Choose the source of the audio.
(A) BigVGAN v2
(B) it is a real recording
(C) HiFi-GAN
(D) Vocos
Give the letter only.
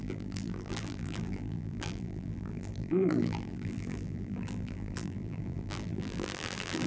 A